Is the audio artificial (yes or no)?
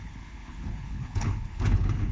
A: yes